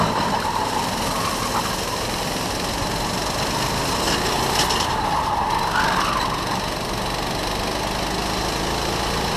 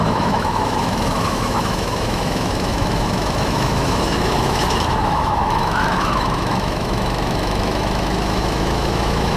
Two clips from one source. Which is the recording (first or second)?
first